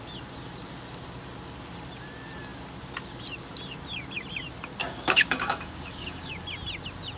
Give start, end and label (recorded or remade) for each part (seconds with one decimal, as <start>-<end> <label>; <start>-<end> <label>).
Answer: 0.0-4.8 recorded; 4.8-6.3 remade; 6.3-7.2 recorded